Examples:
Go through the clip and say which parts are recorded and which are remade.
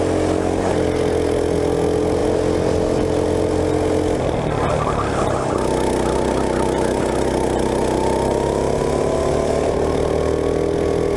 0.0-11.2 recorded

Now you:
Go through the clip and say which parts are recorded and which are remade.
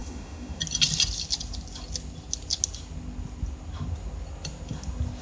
0.0-0.6 remade; 0.6-5.2 recorded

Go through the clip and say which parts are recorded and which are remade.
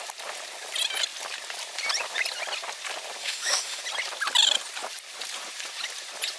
0.0-3.2 recorded; 3.2-3.8 remade; 3.8-6.4 recorded